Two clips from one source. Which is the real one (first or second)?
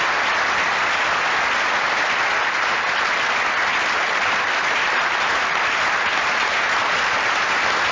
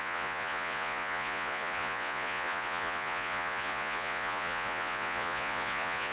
first